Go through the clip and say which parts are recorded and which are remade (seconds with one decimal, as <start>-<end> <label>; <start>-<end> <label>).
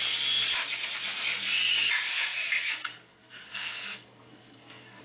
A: 0.0-2.1 recorded; 2.1-5.0 remade